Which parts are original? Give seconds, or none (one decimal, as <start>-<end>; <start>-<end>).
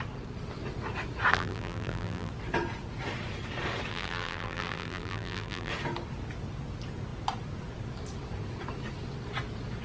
0.0-1.3; 2.3-3.9; 5.7-9.8